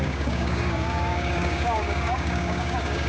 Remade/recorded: remade